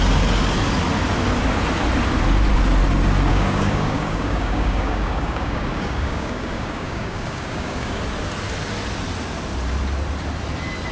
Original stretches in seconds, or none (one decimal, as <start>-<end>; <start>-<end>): 0.0-3.3; 8.0-10.9